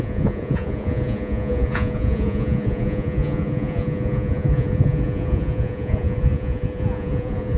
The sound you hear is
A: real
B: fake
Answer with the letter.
B